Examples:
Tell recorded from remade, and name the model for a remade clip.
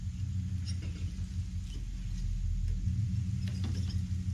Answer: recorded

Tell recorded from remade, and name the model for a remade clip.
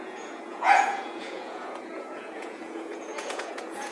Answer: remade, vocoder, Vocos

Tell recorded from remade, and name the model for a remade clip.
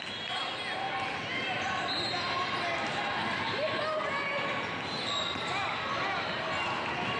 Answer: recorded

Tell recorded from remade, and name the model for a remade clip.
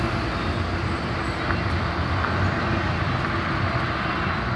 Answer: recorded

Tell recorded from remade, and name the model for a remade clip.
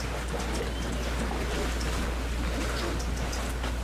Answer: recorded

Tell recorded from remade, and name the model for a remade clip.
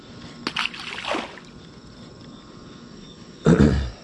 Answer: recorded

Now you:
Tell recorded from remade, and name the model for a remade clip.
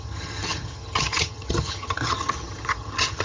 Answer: remade, vocoder, HiFi-GAN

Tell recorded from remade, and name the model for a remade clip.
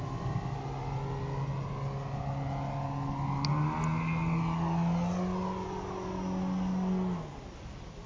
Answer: recorded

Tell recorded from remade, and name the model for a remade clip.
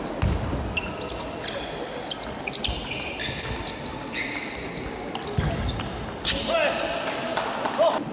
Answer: recorded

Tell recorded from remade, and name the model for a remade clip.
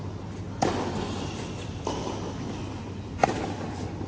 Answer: recorded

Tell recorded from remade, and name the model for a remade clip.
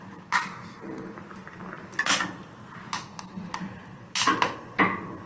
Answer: recorded